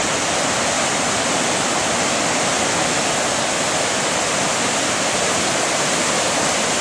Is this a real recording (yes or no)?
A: no